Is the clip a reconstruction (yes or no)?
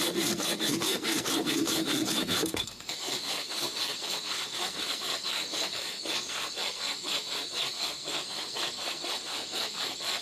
yes